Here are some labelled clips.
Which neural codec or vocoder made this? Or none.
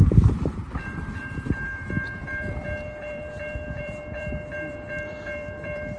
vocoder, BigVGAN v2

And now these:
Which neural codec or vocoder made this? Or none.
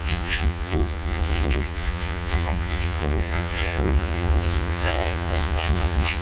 vocoder, Vocos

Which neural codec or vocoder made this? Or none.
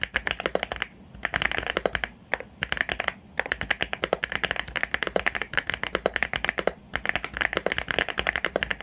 none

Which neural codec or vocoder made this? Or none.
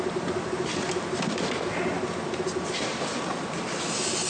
none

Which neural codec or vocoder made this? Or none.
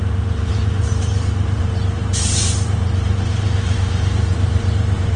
vocoder, BigVGAN v2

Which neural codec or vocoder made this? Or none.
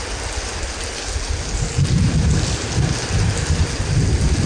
none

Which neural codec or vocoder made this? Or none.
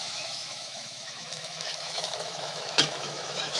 autoencoder, DAC-VAE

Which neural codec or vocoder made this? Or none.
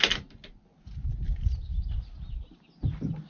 none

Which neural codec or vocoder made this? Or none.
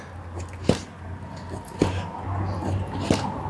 none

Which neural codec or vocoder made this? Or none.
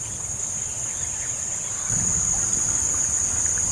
none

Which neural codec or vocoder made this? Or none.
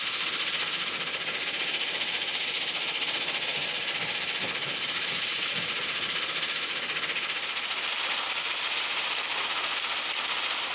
none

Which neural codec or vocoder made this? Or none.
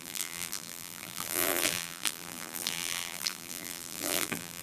vocoder, BigVGAN v2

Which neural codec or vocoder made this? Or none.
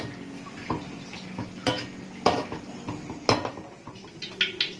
none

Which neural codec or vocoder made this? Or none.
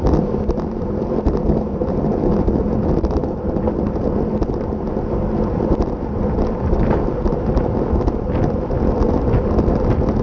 none